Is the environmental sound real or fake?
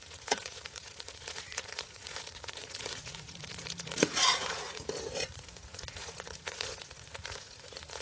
fake